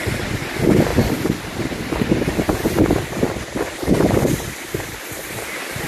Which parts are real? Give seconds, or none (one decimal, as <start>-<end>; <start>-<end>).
0.0-5.9